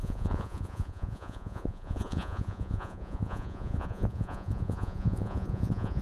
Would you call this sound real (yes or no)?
no